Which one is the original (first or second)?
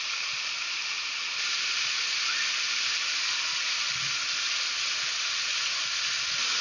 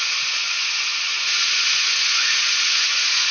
first